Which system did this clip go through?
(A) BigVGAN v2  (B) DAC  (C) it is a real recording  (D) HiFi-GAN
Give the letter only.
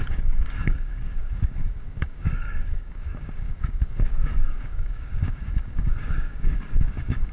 B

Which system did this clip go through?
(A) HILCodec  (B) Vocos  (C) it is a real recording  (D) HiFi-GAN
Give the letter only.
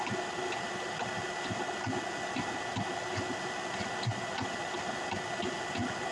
C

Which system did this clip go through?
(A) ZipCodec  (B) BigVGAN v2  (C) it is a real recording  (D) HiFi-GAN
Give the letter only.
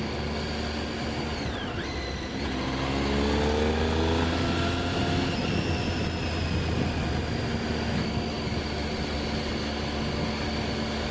C